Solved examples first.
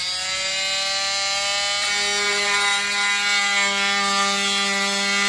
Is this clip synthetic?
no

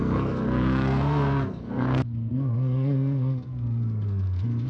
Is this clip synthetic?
yes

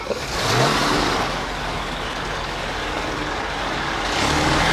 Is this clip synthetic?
yes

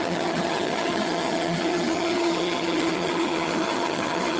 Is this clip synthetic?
yes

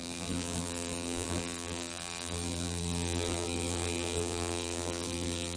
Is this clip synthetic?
yes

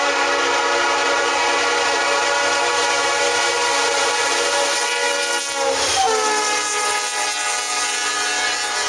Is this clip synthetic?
no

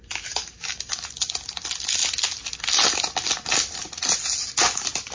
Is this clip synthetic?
no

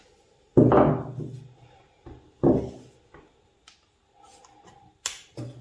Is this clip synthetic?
no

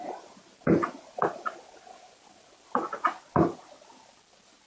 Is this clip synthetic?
no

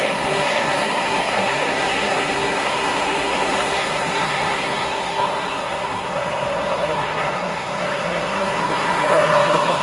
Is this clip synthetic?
yes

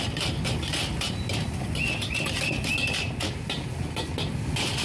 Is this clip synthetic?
no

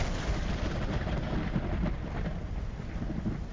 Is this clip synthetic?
no